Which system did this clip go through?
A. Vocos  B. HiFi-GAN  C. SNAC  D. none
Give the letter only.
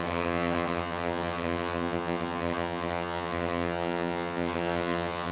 B